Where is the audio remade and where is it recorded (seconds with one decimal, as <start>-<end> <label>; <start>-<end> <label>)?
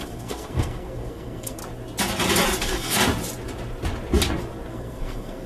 0.0-1.6 remade; 1.6-2.6 recorded; 2.6-3.0 remade; 3.0-4.7 recorded; 4.7-5.5 remade